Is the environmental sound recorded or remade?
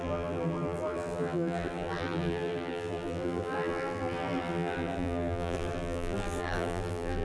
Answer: remade